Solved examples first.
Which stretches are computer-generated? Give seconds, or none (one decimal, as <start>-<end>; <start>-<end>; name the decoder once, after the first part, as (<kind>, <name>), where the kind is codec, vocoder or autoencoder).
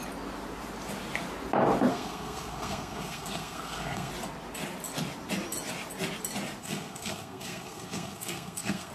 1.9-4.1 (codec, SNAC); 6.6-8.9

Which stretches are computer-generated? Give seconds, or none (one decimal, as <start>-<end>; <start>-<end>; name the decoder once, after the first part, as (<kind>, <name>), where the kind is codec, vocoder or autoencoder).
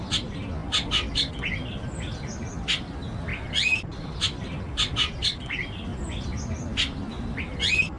none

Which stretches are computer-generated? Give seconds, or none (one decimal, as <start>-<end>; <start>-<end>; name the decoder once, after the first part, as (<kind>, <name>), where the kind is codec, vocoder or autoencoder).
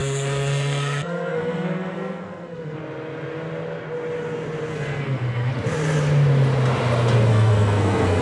0.0-2.8 (codec, SNAC); 4.7-5.5; 7.3-8.2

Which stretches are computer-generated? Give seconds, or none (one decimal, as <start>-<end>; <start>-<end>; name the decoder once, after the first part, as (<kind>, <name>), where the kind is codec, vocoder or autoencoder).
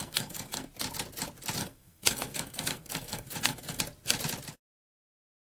0.0-0.7 (codec, SNAC); 1.6-3.8